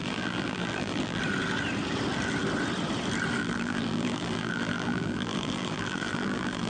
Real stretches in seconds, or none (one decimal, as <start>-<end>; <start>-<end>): 1.2-3.4